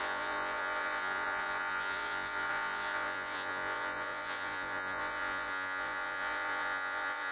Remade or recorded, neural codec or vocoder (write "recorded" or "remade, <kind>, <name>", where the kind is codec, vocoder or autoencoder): remade, vocoder, Vocos